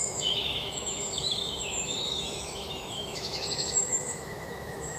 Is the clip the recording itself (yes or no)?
no